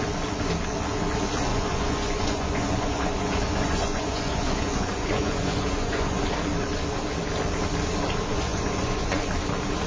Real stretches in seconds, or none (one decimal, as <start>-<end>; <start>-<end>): 0.0-1.5; 6.2-8.3; 9.2-9.9